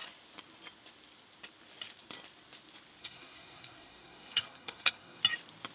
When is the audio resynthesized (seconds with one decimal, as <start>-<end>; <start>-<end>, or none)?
3.0-5.2